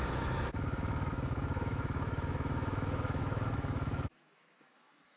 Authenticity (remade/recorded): remade